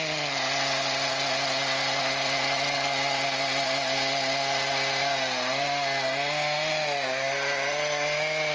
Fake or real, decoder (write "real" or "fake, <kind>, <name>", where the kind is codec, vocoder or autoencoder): real